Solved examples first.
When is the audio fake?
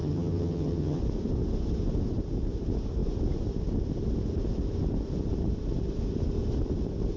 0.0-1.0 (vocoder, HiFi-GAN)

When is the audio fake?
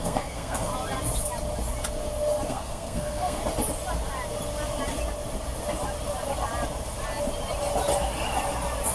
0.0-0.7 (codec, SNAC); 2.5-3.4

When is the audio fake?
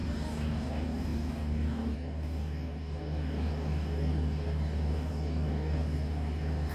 0.0-6.7 (codec, DAC)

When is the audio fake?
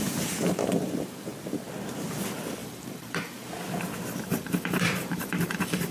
2.6-3.5 (vocoder, BigVGAN v2); 4.3-5.9